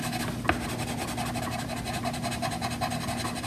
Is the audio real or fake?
real